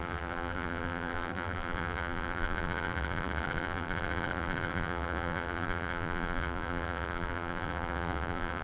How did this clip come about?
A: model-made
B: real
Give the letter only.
A